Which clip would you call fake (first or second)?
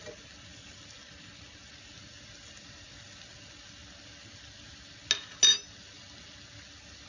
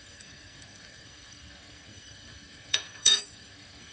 second